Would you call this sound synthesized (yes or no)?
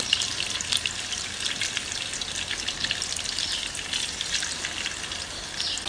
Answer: no